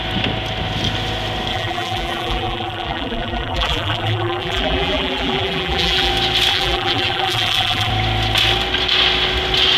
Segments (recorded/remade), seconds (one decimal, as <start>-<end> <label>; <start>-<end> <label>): 0.0-1.5 recorded; 1.5-6.1 remade; 6.1-6.5 recorded; 6.5-7.9 remade; 7.9-9.8 recorded